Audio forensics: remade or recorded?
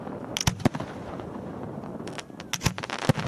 recorded